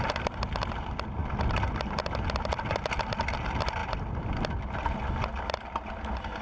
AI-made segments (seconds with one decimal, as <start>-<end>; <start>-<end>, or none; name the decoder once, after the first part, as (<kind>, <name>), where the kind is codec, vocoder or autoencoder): none